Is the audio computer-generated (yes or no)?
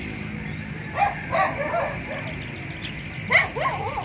no